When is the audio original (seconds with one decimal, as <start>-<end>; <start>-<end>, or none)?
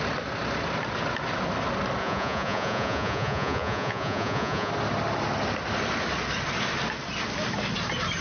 0.0-2.0; 4.7-8.2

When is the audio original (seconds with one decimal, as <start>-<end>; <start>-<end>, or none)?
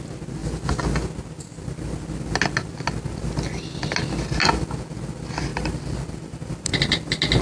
0.0-5.5; 6.5-7.4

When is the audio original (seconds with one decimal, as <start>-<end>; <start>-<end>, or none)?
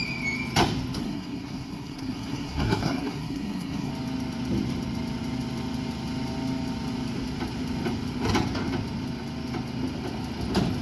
0.0-1.0; 3.9-10.8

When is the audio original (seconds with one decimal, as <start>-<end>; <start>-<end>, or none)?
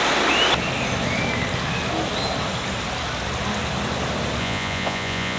0.0-4.4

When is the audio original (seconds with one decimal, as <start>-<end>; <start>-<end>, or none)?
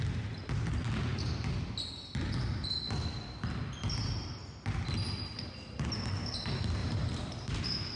0.0-6.8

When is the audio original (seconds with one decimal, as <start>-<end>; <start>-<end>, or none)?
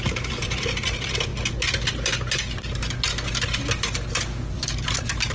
1.3-4.5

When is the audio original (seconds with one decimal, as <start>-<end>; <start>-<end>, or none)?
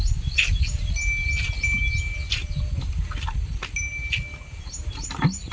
0.0-5.5